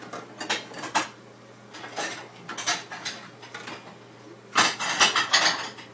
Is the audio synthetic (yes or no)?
no